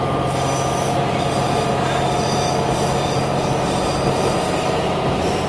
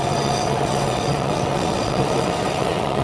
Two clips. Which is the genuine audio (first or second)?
first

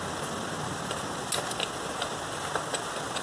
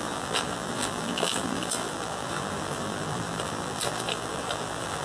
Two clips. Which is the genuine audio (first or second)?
first